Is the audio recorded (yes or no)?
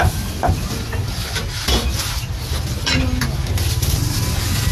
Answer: yes